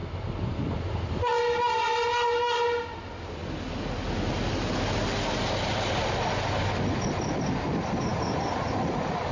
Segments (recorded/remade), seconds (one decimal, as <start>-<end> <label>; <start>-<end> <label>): 0.0-9.3 recorded